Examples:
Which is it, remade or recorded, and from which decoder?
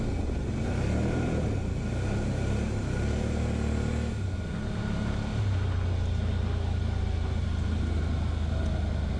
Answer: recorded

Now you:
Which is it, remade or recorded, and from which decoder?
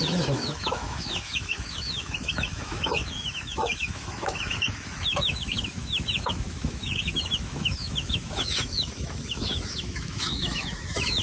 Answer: remade, autoencoder, DAC-VAE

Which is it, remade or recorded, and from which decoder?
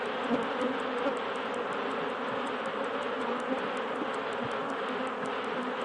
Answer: recorded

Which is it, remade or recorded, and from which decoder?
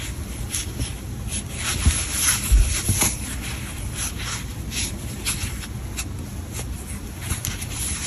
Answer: recorded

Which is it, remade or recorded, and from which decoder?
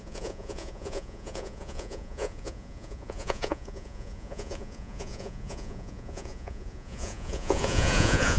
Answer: remade, vocoder, Vocos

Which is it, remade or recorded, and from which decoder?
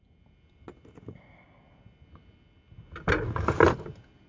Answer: recorded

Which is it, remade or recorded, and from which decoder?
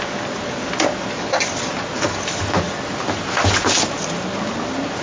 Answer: recorded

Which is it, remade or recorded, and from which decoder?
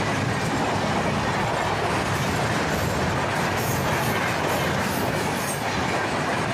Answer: recorded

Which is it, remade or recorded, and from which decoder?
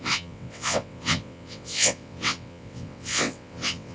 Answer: remade, vocoder, WaveNeXt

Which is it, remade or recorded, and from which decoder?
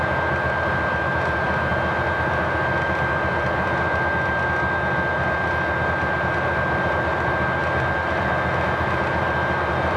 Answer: recorded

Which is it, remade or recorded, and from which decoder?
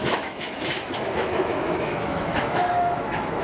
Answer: remade, autoencoder, DAC-VAE